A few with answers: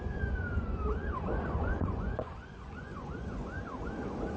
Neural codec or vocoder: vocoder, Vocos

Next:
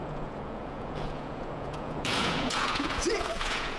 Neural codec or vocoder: vocoder, Vocos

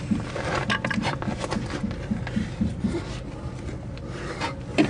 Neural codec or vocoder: none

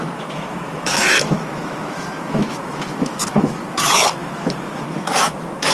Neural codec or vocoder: autoencoder, DAC-VAE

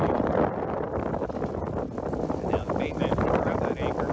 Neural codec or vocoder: none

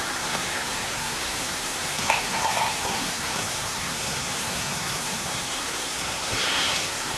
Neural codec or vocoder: codec, SNAC